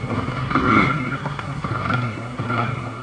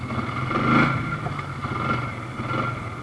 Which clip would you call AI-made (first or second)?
first